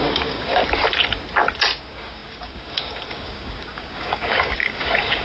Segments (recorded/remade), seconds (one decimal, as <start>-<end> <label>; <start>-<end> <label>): 0.0-0.6 remade; 0.6-1.8 recorded; 1.8-5.2 remade